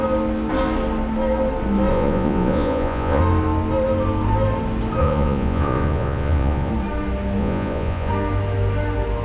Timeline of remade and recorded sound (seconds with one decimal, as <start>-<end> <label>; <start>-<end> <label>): 0.0-1.9 recorded; 1.9-3.2 remade; 3.2-5.0 recorded; 5.0-6.7 remade; 6.7-7.4 recorded; 7.4-8.1 remade; 8.1-9.2 recorded

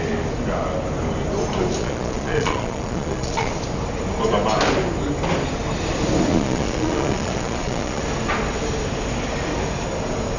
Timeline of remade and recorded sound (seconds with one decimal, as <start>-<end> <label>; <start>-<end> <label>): 0.0-1.8 recorded; 1.8-3.5 remade; 3.5-6.3 recorded; 6.3-8.0 remade; 8.0-10.4 recorded

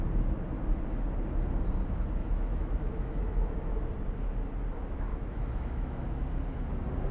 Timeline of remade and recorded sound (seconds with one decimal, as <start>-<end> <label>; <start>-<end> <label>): 0.0-2.2 recorded; 2.2-3.9 remade; 3.9-5.1 recorded; 5.1-6.2 remade; 6.2-7.1 recorded

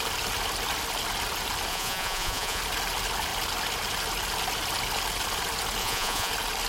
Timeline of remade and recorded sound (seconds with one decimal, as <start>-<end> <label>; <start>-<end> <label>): 0.0-1.7 recorded; 1.7-2.6 remade; 2.6-5.8 recorded; 5.8-6.3 remade; 6.3-6.7 recorded